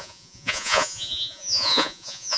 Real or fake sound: fake